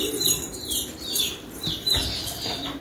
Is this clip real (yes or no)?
no